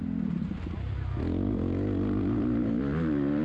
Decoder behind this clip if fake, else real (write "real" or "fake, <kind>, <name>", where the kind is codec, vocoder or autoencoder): real